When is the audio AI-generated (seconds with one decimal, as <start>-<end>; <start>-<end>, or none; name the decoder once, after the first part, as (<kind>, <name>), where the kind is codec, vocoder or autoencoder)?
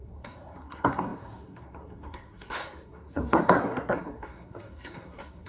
0.0-5.5 (codec, SNAC)